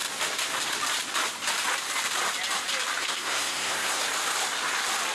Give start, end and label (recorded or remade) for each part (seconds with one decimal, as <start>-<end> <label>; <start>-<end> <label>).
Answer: 0.0-3.0 recorded; 3.0-4.0 remade; 4.0-5.1 recorded